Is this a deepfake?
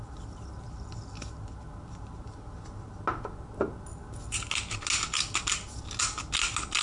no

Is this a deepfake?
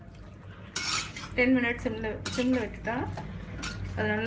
no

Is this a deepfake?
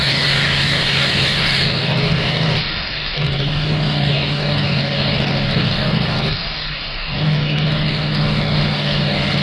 yes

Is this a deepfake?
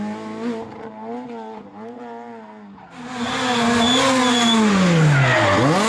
no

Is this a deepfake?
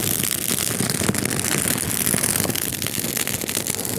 no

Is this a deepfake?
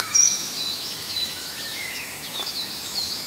yes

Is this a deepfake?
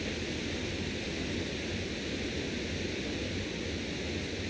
no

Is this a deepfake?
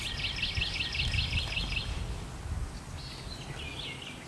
no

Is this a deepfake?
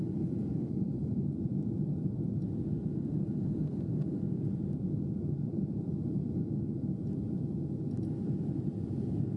yes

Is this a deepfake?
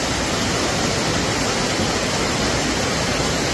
no